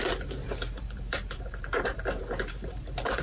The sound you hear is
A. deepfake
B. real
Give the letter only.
A